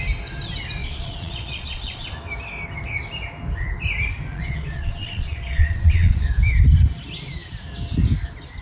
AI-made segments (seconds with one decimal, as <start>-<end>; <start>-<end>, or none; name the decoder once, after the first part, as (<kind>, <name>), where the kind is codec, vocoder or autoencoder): 0.8-2.1 (vocoder, Vocos); 4.3-6.3